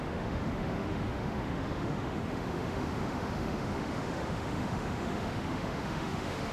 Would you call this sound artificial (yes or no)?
yes